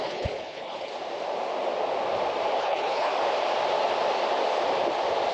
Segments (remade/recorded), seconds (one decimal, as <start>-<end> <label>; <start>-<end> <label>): 0.0-0.9 remade; 0.9-2.6 recorded; 2.6-3.1 remade; 3.1-5.3 recorded

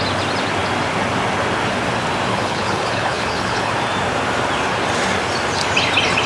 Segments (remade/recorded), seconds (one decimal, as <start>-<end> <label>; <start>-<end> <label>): 0.0-2.3 recorded; 2.3-3.7 remade; 3.7-6.3 recorded

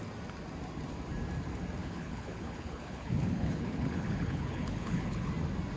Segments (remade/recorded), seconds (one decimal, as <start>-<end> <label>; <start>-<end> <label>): 0.0-1.8 recorded; 1.8-5.3 remade; 5.3-5.8 recorded

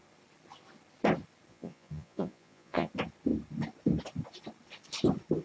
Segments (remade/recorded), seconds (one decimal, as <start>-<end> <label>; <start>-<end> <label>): 0.0-1.5 recorded; 1.5-2.9 remade; 2.9-5.4 recorded